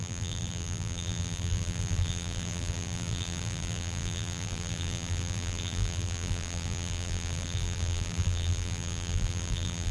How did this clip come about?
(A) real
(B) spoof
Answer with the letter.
B